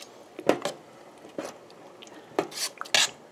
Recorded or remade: recorded